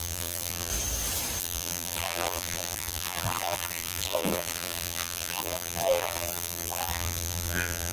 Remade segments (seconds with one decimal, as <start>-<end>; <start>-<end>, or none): 0.0-0.7; 1.4-7.9